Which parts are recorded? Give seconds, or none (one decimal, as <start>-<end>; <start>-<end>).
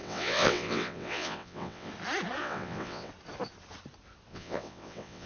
1.9-2.4; 3.1-4.3